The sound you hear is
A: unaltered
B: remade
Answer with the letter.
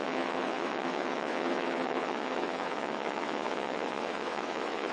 B